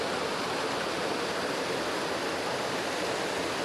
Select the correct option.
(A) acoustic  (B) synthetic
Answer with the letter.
A